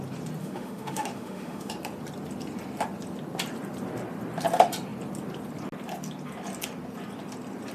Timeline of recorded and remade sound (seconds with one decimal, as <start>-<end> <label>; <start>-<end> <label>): 0.0-0.4 recorded; 0.4-1.7 remade; 1.7-7.7 recorded